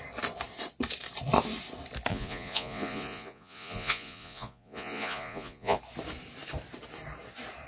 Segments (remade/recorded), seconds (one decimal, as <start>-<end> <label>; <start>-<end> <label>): 0.0-2.1 recorded; 2.1-5.8 remade; 5.8-7.7 recorded